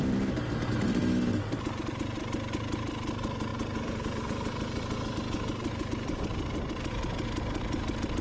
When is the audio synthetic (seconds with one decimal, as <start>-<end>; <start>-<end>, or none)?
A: none